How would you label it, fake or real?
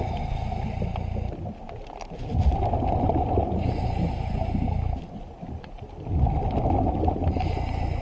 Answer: real